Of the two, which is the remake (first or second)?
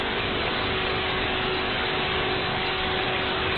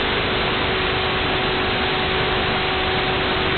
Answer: first